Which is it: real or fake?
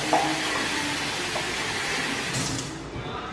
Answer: real